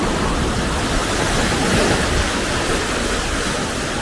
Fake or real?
real